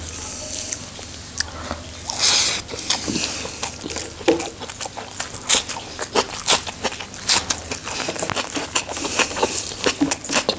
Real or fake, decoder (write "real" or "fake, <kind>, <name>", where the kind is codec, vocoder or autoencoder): real